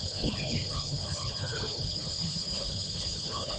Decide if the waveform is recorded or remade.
remade